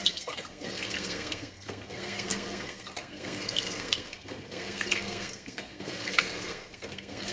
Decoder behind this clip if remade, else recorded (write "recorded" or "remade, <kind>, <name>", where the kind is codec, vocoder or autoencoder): remade, codec, SNAC